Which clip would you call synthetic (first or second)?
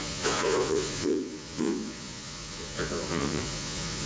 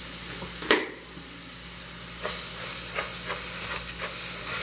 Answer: first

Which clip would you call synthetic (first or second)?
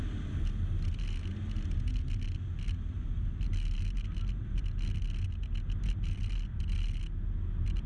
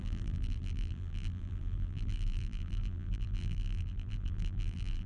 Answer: second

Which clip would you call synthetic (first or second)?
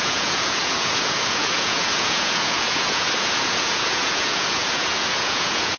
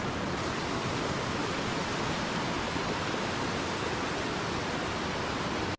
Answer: first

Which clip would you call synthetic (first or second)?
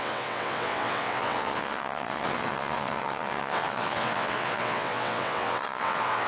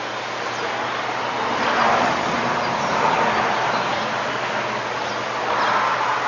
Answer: first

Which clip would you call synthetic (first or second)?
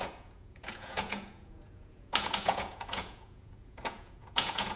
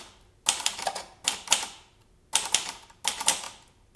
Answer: first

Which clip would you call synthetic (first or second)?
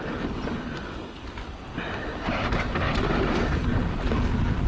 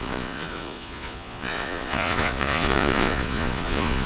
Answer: second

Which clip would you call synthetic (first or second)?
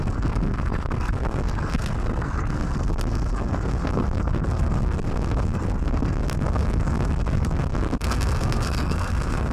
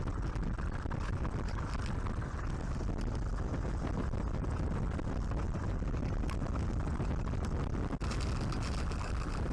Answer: first